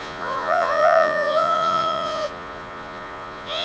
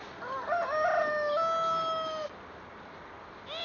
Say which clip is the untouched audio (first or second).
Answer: second